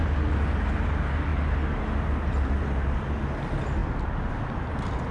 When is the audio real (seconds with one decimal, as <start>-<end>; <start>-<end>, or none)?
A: 0.0-5.1